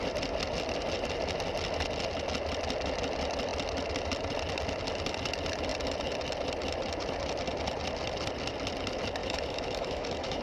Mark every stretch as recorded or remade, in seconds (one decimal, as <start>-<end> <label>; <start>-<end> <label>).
0.0-9.2 recorded; 9.2-10.4 remade